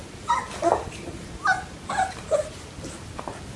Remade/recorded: recorded